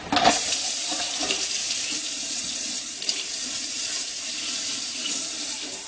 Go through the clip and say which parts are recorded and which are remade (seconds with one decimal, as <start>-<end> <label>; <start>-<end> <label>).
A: 0.0-1.6 recorded; 1.6-5.1 remade; 5.1-5.9 recorded